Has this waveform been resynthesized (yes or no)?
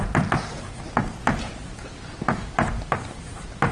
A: yes